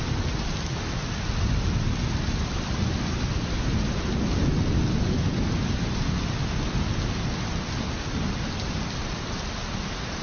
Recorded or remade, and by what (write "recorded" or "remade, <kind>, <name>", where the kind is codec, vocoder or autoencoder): recorded